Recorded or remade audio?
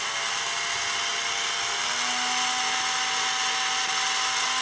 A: recorded